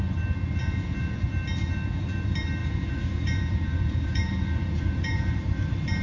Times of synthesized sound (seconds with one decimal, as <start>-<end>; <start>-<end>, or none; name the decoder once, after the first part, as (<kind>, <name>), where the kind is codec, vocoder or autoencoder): 0.6-1.2 (vocoder, Vocos); 2.6-5.4